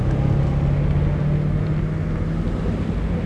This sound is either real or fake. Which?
real